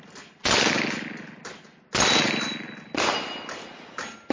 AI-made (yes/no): no